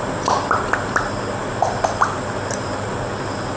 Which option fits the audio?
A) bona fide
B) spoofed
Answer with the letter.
A